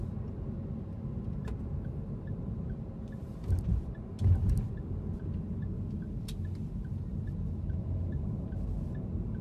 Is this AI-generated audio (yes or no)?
no